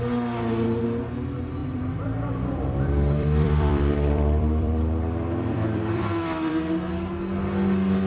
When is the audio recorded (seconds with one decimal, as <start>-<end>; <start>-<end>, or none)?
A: 0.0-1.6; 6.5-8.1